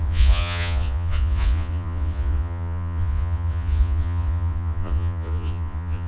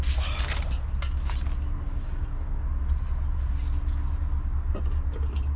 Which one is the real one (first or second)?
second